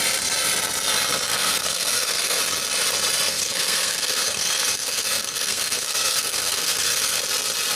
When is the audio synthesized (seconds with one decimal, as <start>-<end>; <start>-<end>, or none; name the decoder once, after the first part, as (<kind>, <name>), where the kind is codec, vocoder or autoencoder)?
1.3-2.4 (codec, SNAC); 3.3-7.2